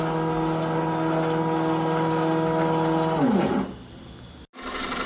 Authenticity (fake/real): real